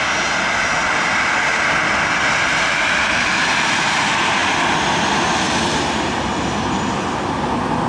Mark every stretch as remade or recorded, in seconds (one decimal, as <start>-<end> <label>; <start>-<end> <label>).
0.0-7.9 recorded